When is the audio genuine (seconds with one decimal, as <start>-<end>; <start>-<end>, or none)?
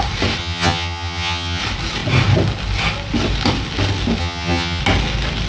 0.0-0.4; 1.6-4.2; 4.8-5.5